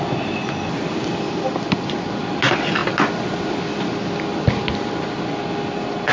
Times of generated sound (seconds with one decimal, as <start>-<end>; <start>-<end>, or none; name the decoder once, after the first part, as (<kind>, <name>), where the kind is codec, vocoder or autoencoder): none